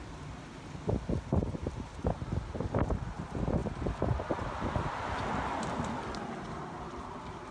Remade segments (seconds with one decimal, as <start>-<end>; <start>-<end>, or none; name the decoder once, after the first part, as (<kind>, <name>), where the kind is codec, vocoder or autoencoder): none